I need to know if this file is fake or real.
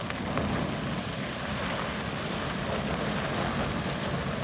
real